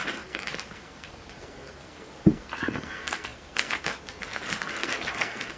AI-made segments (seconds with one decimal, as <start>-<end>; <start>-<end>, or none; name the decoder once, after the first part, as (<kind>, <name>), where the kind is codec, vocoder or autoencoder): 0.0-5.6 (codec, SNAC)